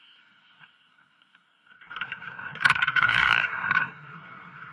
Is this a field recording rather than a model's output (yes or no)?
no